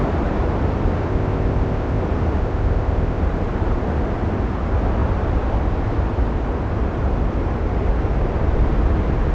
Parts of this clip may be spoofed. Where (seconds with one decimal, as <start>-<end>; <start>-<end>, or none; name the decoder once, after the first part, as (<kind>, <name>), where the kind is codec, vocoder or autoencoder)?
1.1-2.0 (codec, ZipCodec); 2.4-3.2